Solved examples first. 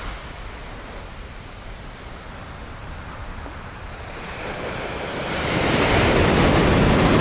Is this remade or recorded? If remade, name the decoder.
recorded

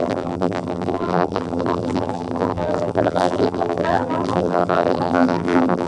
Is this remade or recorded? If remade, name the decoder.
remade, vocoder, BigVGAN v2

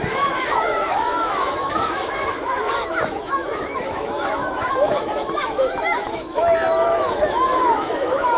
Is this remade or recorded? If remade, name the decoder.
remade, autoencoder, DAC-VAE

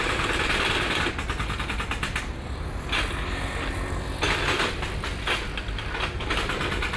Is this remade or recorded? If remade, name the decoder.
recorded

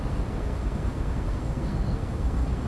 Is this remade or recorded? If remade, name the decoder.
remade, codec, SNAC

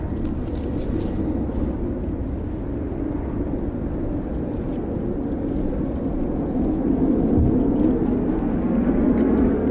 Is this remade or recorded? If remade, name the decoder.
recorded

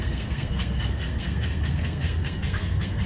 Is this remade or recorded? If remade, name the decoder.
remade, codec, SNAC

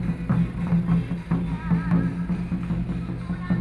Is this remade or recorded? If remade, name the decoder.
recorded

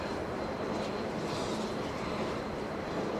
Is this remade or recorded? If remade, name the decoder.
remade, vocoder, BigVGAN v2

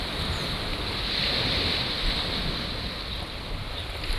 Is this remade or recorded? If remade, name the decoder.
recorded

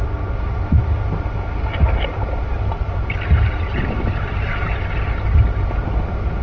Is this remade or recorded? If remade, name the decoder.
recorded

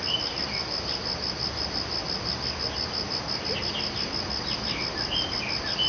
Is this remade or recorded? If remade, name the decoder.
recorded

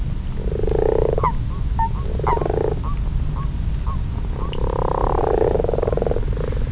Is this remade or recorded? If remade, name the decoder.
recorded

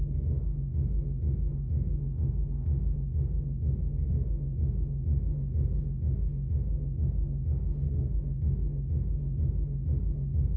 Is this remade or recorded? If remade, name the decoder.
remade, codec, SNAC